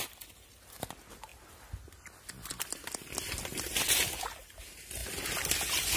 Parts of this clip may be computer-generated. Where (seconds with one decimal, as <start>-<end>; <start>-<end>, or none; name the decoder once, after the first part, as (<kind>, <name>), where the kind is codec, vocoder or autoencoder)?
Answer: none